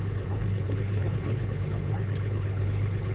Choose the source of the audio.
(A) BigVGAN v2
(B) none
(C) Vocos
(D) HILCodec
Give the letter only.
D